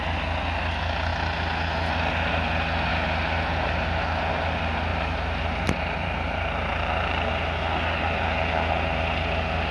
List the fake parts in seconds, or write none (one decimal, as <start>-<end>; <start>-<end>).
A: 4.9-7.3